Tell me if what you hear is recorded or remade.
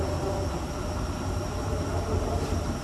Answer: recorded